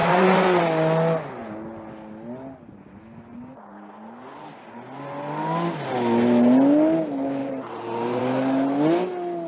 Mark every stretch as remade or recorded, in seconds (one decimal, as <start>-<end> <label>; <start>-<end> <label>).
0.0-0.6 remade; 0.6-7.4 recorded; 7.4-8.2 remade; 8.2-9.5 recorded